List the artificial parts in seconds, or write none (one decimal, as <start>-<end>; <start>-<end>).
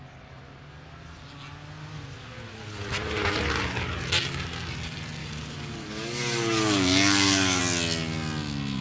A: 5.2-7.6